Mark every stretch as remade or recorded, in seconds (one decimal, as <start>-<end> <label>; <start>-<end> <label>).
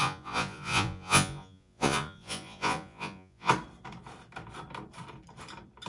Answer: 0.0-3.5 remade; 3.5-5.9 recorded